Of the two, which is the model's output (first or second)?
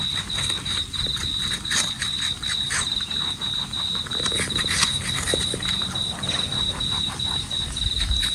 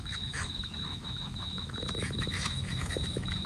second